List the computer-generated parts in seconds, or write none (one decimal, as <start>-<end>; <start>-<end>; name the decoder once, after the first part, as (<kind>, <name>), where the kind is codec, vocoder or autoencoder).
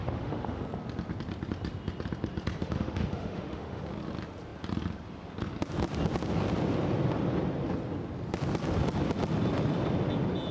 0.0-0.6 (autoencoder, DAC-VAE); 2.6-3.8